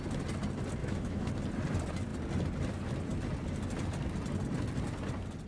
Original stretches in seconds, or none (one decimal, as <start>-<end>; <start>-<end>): 0.0-0.8; 1.3-5.5